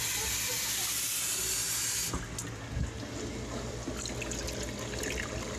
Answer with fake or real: real